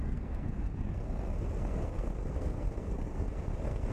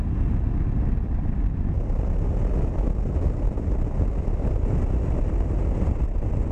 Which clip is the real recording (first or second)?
second